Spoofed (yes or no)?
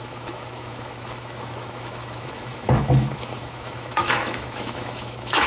yes